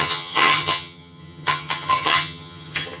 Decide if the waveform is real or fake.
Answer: fake